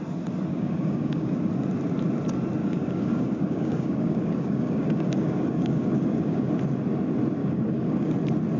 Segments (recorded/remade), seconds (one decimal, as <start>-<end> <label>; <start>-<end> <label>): 0.0-0.5 recorded; 0.5-1.3 remade; 1.3-2.6 recorded; 2.6-6.5 remade; 6.5-7.4 recorded; 7.4-8.1 remade; 8.1-8.6 recorded